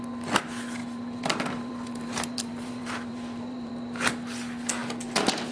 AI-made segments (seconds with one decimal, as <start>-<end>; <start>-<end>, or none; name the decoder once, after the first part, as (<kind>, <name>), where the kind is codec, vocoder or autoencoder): 0.8-3.7 (vocoder, BigVGAN v2)